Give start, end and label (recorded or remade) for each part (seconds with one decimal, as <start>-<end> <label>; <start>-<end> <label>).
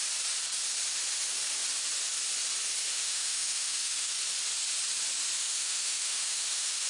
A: 0.0-2.9 recorded; 2.9-4.1 remade; 4.1-5.4 recorded; 5.4-6.9 remade